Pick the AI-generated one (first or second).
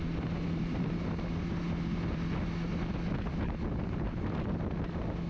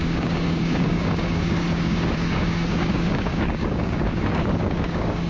second